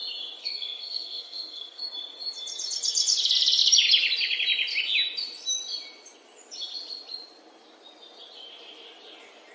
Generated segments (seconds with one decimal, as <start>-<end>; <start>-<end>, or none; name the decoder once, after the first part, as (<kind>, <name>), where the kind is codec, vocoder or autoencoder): 0.4-1.8 (codec, SNAC)